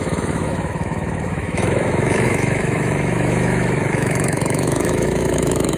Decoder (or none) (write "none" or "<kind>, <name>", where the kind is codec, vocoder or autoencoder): autoencoder, DAC-VAE